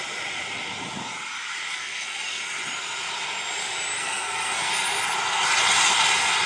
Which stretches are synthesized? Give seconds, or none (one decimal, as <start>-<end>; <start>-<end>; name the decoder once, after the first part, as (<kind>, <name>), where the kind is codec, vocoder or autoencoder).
1.7-2.4 (codec, SNAC); 4.0-4.7